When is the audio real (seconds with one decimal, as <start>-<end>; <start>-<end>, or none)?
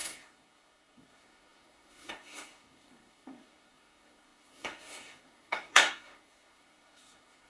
none